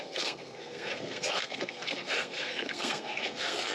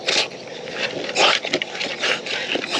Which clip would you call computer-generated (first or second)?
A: first